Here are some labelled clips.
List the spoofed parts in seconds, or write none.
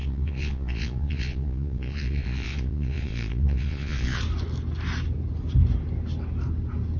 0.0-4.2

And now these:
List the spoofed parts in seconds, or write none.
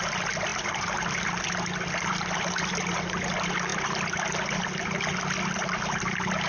none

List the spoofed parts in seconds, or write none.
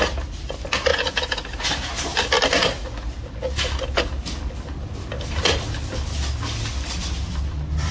0.9-1.5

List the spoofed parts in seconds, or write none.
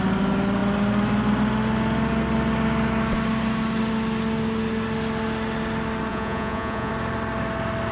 6.1-6.9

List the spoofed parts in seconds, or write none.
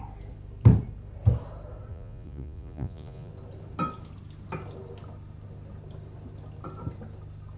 1.9-3.3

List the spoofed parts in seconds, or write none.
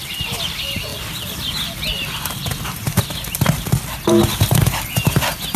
none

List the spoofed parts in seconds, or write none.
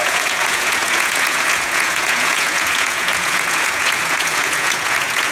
0.0-5.3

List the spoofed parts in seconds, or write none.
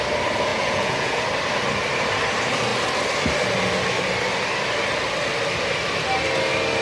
0.5-1.2